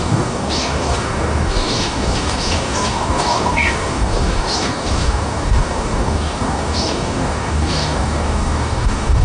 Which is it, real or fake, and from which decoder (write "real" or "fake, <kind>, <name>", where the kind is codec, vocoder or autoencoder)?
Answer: fake, codec, DAC